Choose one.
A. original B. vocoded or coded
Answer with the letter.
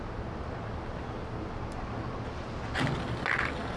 A